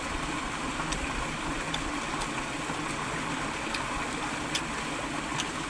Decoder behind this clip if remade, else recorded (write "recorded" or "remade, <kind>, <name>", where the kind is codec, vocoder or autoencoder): recorded